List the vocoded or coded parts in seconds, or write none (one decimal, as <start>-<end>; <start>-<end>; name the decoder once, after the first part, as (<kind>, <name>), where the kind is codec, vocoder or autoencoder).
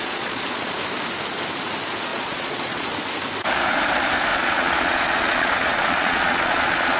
0.0-0.7 (vocoder, Vocos); 2.1-2.9; 4.3-7.0